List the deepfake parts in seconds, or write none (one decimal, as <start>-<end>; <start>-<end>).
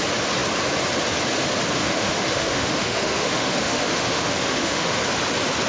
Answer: 1.8-5.0